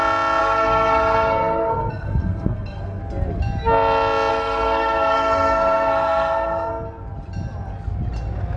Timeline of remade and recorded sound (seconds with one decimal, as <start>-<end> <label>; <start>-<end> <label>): 0.0-0.4 recorded; 0.4-3.0 remade; 3.0-4.3 recorded; 4.3-6.7 remade; 6.7-8.6 recorded